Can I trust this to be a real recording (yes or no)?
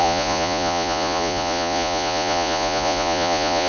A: no